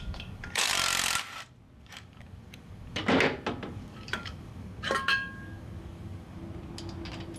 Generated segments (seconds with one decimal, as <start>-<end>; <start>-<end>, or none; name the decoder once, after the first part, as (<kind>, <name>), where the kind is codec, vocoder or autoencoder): 0.0-0.7 (codec, DAC); 1.8-3.0; 3.7-6.4